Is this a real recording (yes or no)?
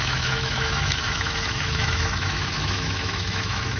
no